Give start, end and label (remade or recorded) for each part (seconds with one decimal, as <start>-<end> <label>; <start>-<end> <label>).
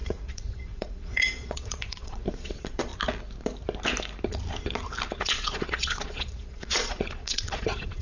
0.0-2.9 remade; 2.9-5.1 recorded; 5.1-8.0 remade